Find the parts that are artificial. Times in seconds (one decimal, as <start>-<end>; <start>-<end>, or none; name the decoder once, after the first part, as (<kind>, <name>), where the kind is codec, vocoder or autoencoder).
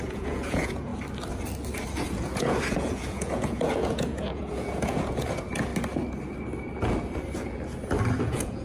0.0-0.9 (vocoder, Vocos); 2.1-5.7; 8.2-8.6